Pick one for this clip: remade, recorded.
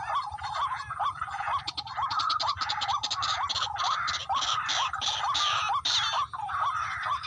recorded